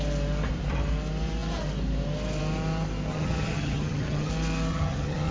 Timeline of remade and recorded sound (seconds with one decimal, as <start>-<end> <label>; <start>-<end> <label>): 0.0-3.1 recorded; 3.1-4.3 remade; 4.3-4.7 recorded; 4.7-5.3 remade